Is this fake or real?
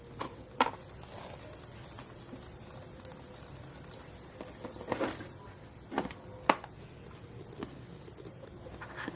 real